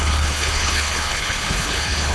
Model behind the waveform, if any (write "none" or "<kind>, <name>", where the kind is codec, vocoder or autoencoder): codec, HILCodec